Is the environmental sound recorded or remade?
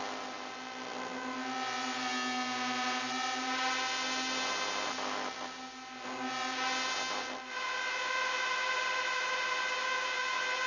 recorded